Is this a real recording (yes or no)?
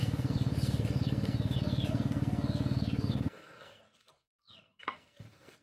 no